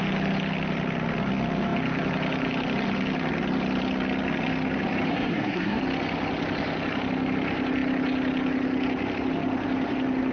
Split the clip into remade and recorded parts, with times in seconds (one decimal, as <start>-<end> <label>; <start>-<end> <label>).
0.0-5.1 recorded; 5.1-5.8 remade; 5.8-10.3 recorded